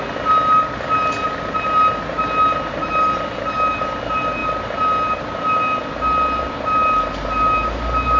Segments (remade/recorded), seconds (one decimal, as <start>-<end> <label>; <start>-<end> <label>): 0.0-8.2 recorded